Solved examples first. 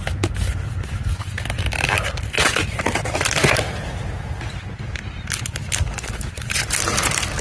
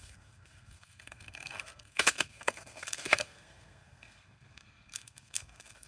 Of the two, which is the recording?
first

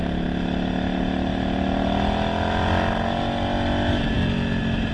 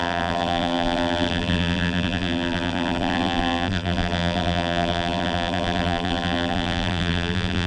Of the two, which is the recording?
first